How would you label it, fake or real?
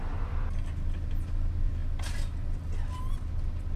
real